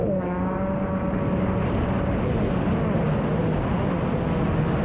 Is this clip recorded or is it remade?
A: recorded